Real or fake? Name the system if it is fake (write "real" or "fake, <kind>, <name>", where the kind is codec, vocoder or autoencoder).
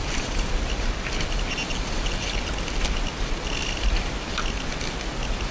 real